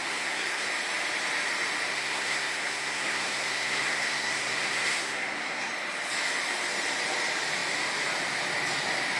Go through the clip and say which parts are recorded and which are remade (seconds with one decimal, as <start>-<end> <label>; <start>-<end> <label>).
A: 0.0-0.7 remade; 0.7-1.9 recorded; 1.9-5.7 remade; 5.7-9.2 recorded